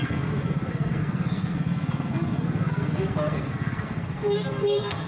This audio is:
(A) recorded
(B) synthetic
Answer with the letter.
B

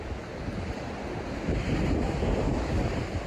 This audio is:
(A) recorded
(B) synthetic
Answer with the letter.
A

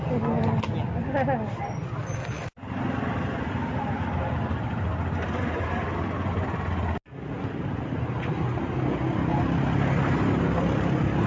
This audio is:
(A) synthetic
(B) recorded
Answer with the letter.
B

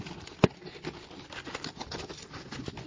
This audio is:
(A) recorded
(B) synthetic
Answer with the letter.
A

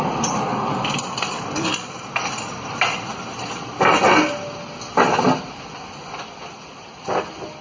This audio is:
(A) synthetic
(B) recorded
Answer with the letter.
B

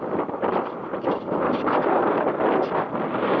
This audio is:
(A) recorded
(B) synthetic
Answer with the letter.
A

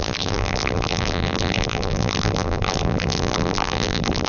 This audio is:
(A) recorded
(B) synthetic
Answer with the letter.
B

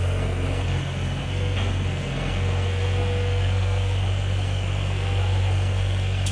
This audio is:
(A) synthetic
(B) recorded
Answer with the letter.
A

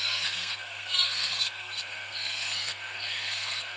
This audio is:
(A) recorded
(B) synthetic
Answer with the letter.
B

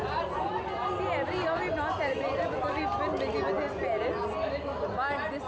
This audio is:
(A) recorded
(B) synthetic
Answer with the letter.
A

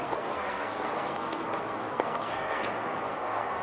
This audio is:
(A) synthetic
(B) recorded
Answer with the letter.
A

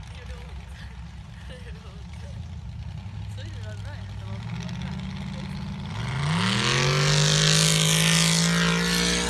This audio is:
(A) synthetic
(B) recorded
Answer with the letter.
B